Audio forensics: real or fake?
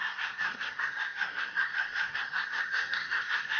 fake